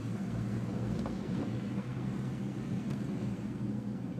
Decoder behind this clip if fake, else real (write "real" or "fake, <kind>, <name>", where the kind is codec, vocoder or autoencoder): fake, codec, SNAC